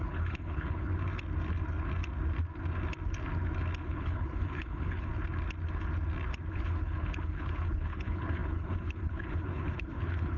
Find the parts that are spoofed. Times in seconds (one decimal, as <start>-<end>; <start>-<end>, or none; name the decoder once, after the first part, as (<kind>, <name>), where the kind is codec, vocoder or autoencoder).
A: 0.0-0.9 (codec, HILCodec); 3.8-5.1; 6.5-10.4